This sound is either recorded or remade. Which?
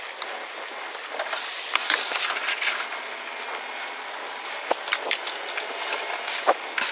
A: recorded